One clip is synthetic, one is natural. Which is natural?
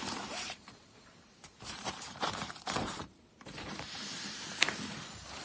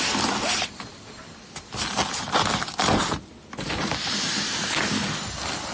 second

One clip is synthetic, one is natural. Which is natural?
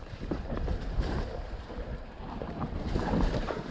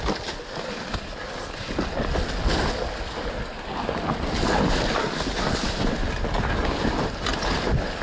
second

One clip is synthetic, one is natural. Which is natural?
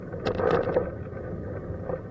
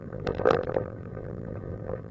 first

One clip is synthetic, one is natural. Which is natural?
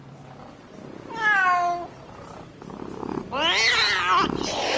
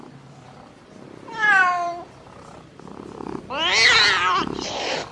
first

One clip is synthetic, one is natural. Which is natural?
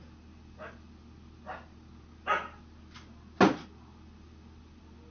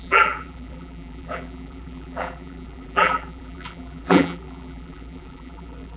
first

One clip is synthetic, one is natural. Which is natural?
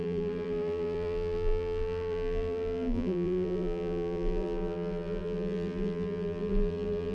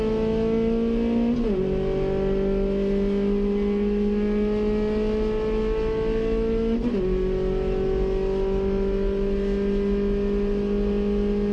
second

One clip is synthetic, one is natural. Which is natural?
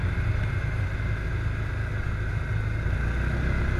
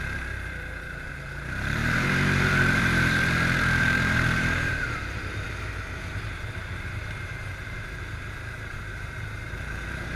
first